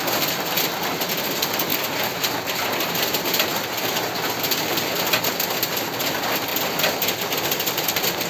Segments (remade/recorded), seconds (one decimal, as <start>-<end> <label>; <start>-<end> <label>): 0.0-8.3 recorded